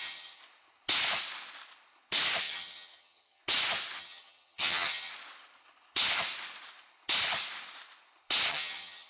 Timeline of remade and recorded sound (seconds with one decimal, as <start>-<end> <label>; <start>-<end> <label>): 0.0-0.4 remade; 0.4-2.4 recorded; 2.4-3.4 remade; 3.4-4.0 recorded; 4.0-5.1 remade; 5.1-8.5 recorded; 8.5-9.1 remade